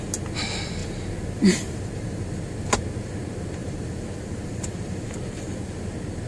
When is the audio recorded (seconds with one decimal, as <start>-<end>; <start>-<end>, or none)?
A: 0.0-0.8; 2.2-3.6; 5.0-6.3